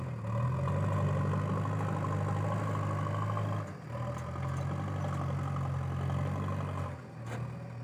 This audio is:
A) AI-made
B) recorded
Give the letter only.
B